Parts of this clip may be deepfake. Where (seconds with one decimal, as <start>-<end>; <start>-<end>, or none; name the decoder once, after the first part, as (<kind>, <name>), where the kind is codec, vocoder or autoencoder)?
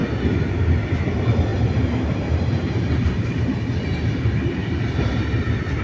1.5-3.5 (vocoder, BigVGAN v2); 4.6-5.2